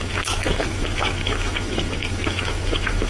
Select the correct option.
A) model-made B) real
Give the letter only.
A